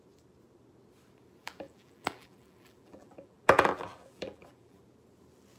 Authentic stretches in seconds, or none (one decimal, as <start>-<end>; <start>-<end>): 0.0-1.4; 4.8-5.6